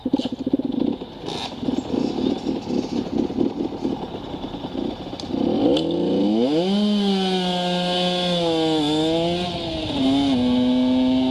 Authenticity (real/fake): real